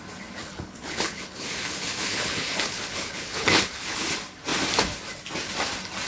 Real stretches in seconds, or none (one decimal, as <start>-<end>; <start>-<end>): 0.0-0.4; 4.1-6.1

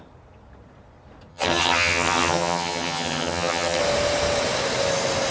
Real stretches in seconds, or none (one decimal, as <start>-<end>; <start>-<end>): 0.0-1.3; 3.8-5.3

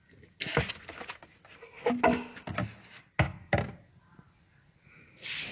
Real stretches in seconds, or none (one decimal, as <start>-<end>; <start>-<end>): 0.0-5.5

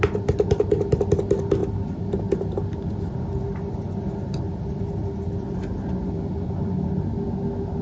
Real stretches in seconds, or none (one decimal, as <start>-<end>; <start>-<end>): 0.0-7.8

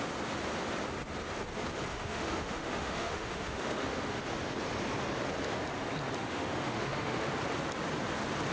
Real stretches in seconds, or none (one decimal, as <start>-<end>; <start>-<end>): 0.0-1.9; 4.2-6.2; 7.3-8.5

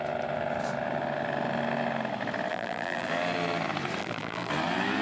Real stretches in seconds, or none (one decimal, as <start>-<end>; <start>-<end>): 0.0-2.5; 3.1-4.0; 4.5-5.0